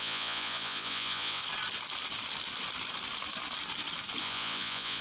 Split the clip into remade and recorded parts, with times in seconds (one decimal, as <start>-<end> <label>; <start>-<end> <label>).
0.0-1.4 remade; 1.4-4.2 recorded; 4.2-5.0 remade

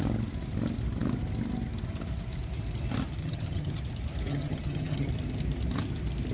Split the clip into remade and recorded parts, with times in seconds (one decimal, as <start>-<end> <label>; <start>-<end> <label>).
0.0-3.2 recorded; 3.2-3.8 remade; 3.8-4.3 recorded; 4.3-5.1 remade; 5.1-6.3 recorded